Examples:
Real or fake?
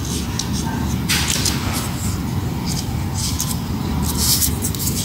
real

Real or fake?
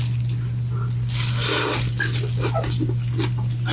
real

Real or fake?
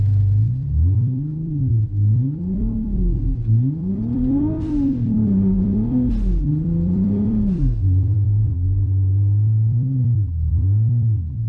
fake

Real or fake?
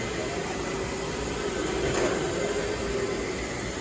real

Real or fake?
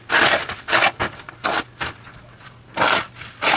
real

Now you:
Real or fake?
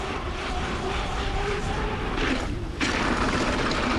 fake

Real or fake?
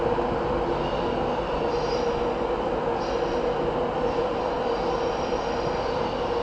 real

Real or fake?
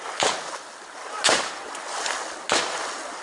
real